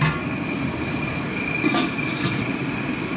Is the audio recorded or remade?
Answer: recorded